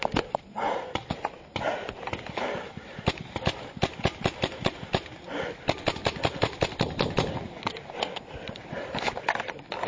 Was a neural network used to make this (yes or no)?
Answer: yes